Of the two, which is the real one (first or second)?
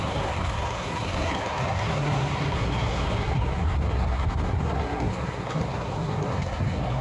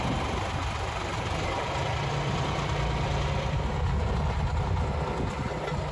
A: second